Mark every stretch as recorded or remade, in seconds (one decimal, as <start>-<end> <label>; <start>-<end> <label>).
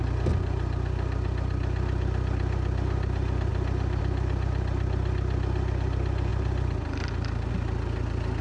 0.0-8.4 recorded